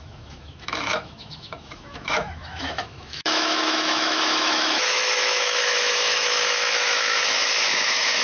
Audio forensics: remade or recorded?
remade